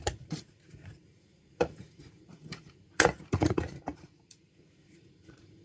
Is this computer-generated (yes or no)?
yes